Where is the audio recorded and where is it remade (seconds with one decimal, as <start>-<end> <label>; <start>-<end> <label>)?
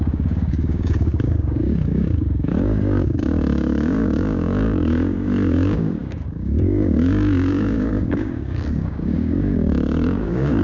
0.0-10.6 remade